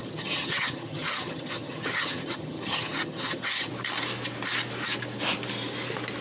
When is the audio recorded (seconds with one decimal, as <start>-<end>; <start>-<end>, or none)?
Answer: 3.7-6.2